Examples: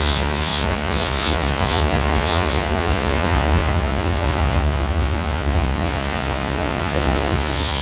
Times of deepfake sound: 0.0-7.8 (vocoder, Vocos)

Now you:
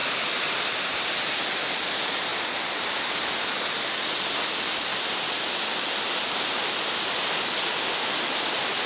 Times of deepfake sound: none

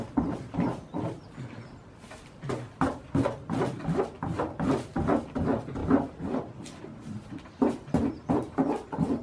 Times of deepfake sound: none